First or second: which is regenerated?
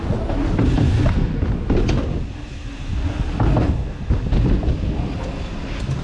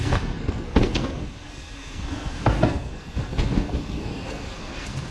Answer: second